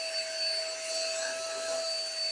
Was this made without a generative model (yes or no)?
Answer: yes